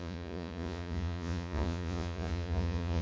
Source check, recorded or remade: remade